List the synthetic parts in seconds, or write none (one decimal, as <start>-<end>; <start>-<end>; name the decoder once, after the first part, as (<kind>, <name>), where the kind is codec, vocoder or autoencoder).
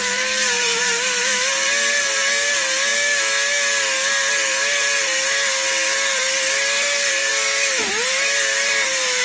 0.0-2.9 (vocoder, BigVGAN v2); 4.3-9.2